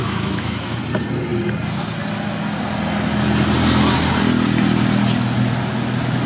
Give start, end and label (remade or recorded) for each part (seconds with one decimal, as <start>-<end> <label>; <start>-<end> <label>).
0.0-0.8 remade; 0.8-6.3 recorded